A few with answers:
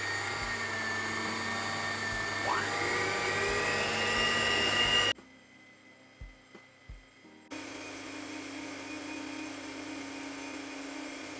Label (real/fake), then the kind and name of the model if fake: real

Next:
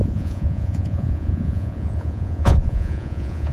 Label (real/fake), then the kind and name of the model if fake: fake, vocoder, Vocos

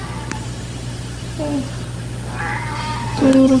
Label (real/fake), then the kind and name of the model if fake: real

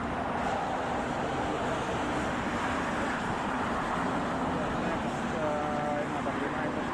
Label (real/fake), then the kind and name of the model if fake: real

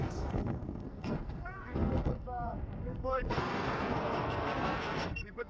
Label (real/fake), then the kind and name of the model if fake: fake, codec, SNAC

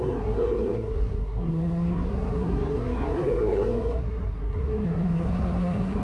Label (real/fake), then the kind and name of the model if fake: fake, codec, SNAC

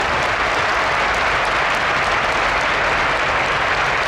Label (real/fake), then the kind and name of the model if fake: real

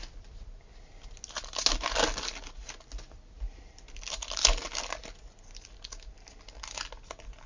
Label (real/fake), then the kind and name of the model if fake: real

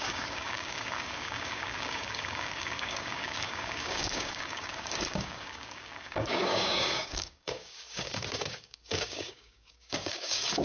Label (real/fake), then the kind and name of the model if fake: fake, codec, DAC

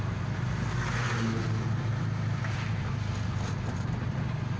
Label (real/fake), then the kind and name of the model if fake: real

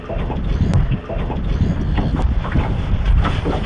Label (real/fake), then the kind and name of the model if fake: real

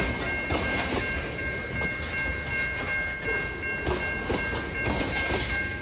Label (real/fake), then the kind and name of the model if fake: real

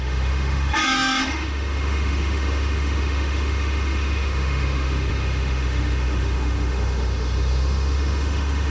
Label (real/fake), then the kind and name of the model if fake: fake, autoencoder, DAC-VAE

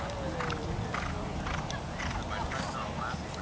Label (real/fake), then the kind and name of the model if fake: real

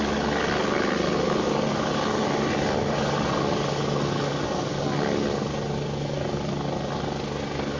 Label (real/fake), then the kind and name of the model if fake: real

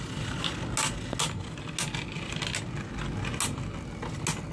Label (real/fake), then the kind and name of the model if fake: real